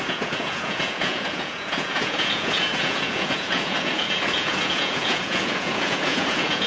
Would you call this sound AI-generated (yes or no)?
yes